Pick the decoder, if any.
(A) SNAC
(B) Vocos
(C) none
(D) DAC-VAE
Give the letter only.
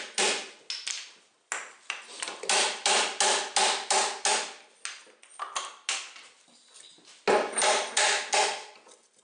C